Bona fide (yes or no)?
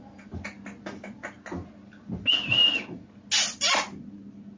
yes